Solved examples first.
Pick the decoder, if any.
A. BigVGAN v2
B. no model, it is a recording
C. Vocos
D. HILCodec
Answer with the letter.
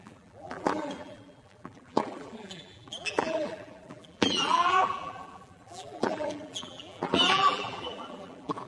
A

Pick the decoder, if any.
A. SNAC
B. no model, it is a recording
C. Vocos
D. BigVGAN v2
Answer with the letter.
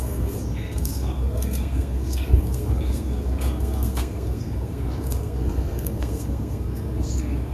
A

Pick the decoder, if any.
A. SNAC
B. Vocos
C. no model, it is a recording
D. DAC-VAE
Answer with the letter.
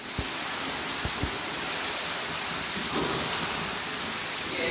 C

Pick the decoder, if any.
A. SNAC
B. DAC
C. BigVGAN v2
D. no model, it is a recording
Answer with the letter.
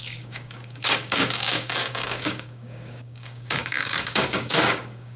B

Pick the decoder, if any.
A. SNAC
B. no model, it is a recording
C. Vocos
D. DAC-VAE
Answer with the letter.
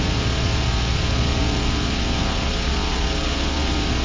C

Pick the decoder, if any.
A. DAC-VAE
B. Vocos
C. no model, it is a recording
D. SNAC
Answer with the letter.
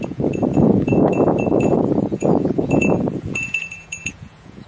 B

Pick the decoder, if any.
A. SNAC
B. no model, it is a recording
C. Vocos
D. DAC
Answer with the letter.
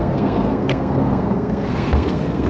A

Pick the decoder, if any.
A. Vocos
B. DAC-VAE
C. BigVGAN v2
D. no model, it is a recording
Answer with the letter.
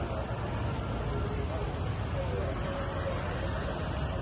D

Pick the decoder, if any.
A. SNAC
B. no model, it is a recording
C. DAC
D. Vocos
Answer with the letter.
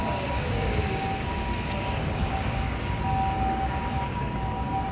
C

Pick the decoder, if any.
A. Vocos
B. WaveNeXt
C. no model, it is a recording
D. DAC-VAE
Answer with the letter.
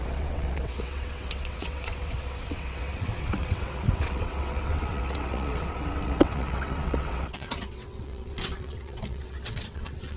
B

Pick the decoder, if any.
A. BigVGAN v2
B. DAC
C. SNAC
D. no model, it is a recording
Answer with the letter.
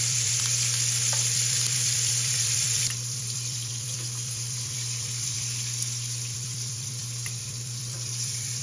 A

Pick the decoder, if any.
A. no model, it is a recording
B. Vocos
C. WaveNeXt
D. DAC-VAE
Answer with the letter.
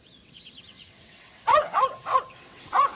C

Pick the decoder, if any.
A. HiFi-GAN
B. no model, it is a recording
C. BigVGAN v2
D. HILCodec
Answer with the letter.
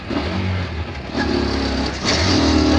B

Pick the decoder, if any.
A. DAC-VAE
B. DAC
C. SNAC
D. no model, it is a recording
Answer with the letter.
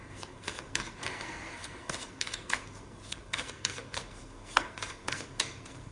C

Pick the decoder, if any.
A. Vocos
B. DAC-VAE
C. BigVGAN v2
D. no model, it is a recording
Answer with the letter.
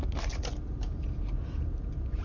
C